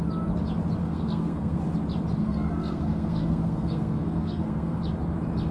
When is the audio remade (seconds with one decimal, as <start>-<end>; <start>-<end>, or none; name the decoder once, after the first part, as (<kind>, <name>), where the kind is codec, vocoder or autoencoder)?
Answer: 0.8-1.6 (codec, SNAC); 2.2-4.8